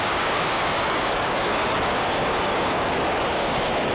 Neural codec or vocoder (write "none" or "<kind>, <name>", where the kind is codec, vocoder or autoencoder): codec, DAC